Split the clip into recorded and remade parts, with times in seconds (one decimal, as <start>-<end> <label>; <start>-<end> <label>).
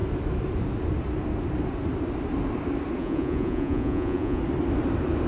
0.0-3.0 recorded; 3.0-4.4 remade; 4.4-5.3 recorded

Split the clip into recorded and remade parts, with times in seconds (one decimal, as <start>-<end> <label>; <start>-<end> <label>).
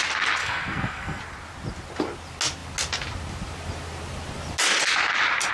0.0-0.4 recorded; 0.4-1.2 remade; 1.2-5.5 recorded